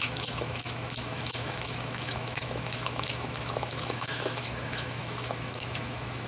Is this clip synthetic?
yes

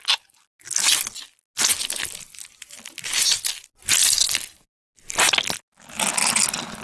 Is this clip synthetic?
no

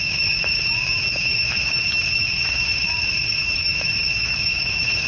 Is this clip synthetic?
yes